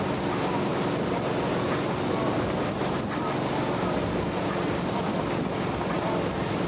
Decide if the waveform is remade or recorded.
recorded